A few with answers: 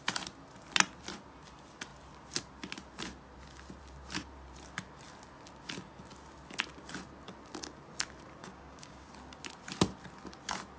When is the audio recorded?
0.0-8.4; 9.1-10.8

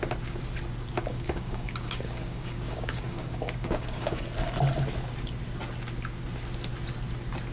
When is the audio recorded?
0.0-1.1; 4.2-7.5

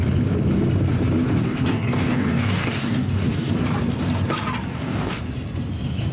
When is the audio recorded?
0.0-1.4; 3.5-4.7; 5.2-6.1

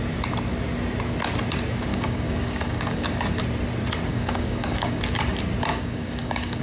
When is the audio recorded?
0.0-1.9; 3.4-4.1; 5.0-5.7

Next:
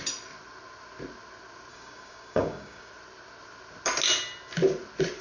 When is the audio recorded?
0.0-1.7; 2.9-5.2

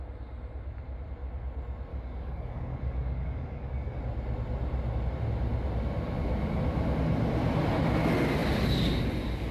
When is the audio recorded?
0.0-1.9; 4.0-9.5

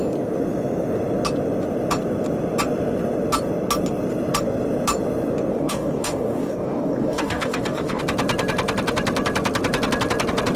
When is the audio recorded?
0.0-5.5; 8.0-10.6